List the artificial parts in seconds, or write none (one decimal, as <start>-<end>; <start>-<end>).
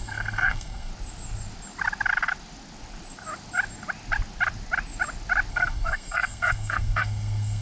0.0-0.9; 5.5-7.6